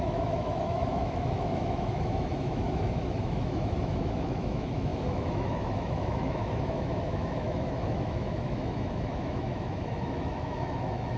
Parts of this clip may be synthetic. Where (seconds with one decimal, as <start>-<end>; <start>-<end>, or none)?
0.0-11.2